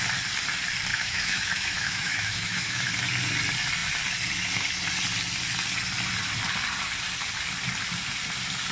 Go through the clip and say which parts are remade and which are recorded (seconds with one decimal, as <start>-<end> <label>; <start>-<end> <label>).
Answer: 0.0-0.9 recorded; 0.9-2.9 remade; 2.9-8.7 recorded

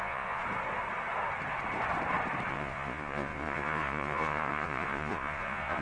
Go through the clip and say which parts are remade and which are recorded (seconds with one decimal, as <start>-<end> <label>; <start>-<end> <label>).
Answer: 0.0-0.4 remade; 0.4-2.5 recorded; 2.5-5.8 remade

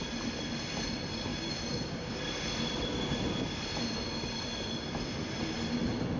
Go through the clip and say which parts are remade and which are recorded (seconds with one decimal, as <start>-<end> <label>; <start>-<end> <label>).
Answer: 0.0-1.3 recorded; 1.3-2.1 remade; 2.1-6.2 recorded

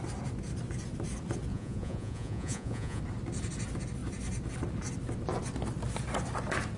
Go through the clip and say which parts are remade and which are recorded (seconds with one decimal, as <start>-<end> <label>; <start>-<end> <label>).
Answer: 0.0-1.5 recorded; 1.5-3.0 remade; 3.0-6.8 recorded

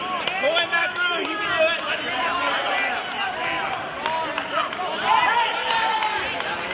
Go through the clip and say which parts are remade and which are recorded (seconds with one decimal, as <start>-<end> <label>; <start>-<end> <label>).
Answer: 0.0-0.8 recorded; 0.8-1.4 remade; 1.4-6.7 recorded

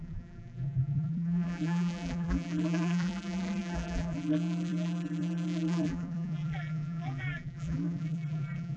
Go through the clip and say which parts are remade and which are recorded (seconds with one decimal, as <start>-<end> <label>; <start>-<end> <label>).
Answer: 0.0-8.8 remade